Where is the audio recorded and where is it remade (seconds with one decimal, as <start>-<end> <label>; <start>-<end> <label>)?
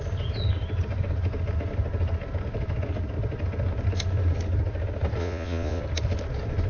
0.0-5.2 recorded; 5.2-5.8 remade; 5.8-6.7 recorded